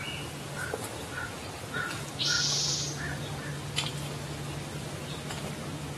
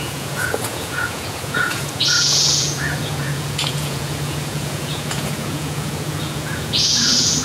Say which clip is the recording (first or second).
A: first